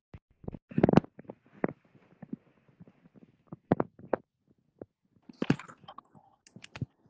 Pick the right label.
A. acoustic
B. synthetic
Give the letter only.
A